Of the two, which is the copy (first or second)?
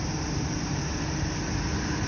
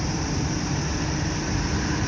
second